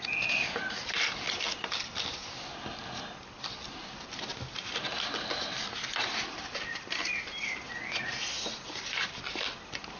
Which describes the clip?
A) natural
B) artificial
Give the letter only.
A